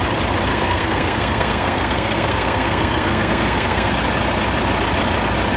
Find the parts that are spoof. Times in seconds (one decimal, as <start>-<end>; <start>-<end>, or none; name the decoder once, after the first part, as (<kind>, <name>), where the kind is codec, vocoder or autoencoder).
0.5-3.9 (codec, SNAC)

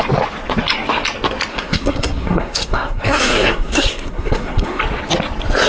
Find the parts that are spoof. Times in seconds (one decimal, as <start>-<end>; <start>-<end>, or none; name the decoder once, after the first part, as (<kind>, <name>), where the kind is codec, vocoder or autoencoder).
1.5-4.8 (codec, SNAC)

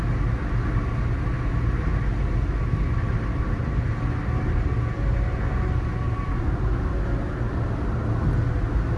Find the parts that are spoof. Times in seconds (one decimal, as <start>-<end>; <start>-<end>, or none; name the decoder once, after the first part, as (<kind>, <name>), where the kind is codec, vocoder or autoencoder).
none